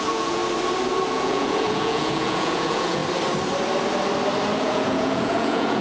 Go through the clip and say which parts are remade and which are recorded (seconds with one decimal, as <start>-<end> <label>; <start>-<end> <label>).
0.0-0.4 remade; 0.4-1.1 recorded; 1.1-3.0 remade; 3.0-4.6 recorded; 4.6-5.8 remade